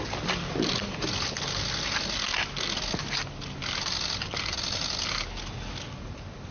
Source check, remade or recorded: recorded